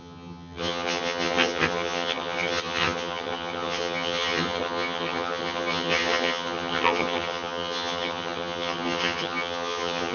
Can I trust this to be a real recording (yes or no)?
no